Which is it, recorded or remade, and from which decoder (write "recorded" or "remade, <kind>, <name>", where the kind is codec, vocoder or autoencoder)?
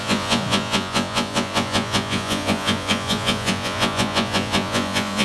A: remade, vocoder, Vocos